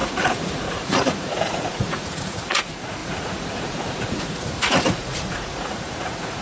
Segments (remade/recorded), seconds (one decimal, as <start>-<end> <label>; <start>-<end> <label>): 0.0-6.4 remade